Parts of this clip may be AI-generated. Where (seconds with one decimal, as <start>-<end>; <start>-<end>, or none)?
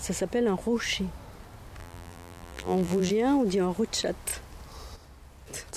1.8-3.1